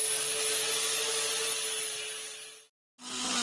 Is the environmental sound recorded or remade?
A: recorded